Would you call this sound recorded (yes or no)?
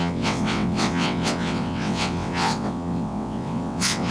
no